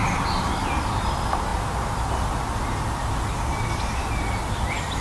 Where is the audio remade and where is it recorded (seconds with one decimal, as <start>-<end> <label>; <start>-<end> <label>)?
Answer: 0.0-1.5 remade; 1.5-4.5 recorded; 4.5-5.0 remade